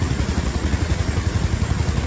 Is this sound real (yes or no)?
no